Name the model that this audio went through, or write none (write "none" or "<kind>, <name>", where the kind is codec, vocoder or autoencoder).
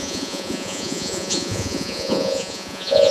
vocoder, Vocos